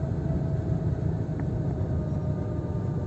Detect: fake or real real